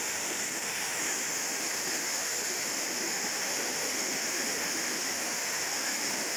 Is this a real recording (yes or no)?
no